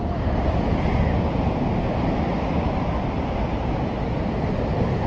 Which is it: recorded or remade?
recorded